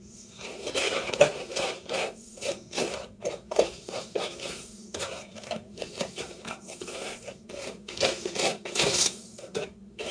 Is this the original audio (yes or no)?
no